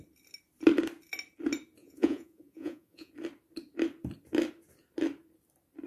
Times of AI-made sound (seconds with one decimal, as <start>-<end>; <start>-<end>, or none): 1.8-3.1